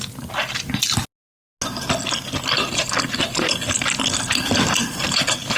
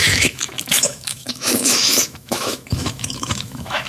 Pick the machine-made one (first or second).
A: second